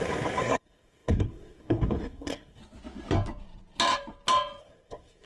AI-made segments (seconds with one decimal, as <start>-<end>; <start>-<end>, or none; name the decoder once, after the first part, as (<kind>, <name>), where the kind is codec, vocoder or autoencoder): 0.0-2.6 (codec, SNAC); 4.6-5.3